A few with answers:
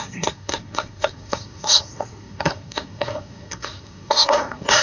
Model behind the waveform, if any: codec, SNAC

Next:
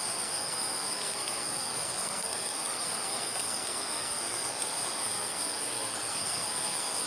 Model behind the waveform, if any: codec, SNAC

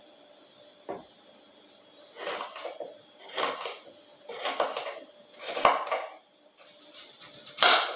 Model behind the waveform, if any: none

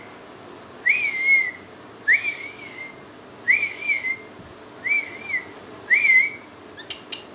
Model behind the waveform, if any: none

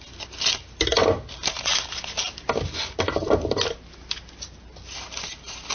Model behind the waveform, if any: none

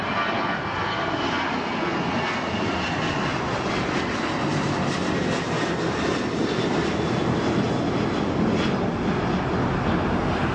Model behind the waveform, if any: none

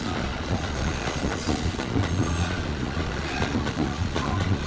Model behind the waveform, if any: vocoder, Vocos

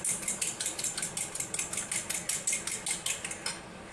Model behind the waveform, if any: none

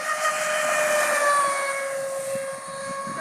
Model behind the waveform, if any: none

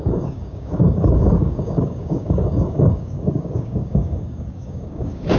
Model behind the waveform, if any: codec, DAC